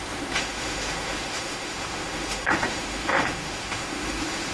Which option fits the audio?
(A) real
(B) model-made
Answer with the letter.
B